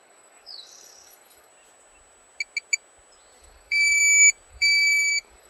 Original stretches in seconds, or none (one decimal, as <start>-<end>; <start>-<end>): 1.5-3.4; 4.0-4.5